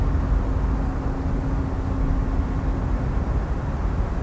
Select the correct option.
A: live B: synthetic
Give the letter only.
A